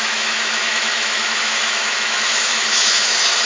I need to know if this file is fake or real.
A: fake